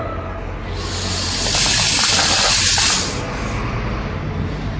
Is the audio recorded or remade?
recorded